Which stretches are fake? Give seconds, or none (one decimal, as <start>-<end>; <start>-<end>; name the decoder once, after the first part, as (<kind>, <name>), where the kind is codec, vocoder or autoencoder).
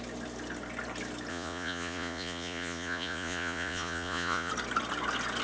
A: 1.3-4.5 (vocoder, Vocos)